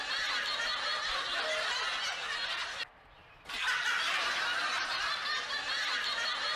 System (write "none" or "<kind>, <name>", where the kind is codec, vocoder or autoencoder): none